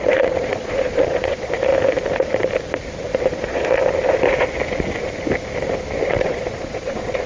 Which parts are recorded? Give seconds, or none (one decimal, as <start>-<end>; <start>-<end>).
1.7-3.3; 3.8-6.1